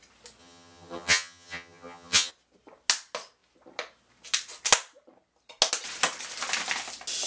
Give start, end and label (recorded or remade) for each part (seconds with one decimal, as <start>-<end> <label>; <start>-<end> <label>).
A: 0.0-0.4 recorded; 0.4-2.3 remade; 2.3-7.3 recorded